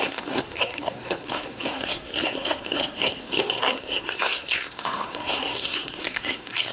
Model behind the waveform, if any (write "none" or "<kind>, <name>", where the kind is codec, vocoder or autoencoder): codec, SNAC